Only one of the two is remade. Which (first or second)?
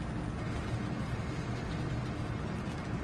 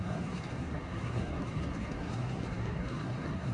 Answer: second